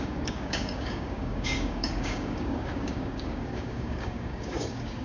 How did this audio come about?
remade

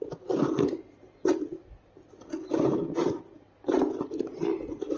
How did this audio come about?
recorded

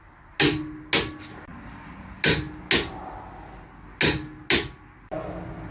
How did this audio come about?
recorded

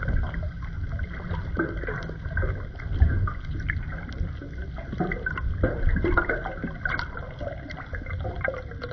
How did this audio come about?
recorded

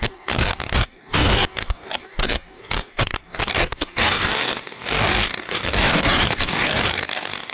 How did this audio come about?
remade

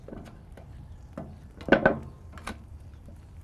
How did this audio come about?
recorded